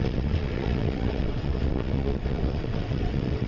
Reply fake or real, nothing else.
fake